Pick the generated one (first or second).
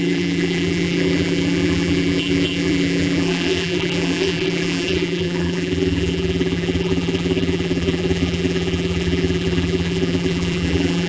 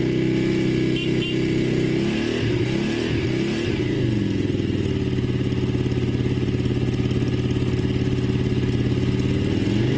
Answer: first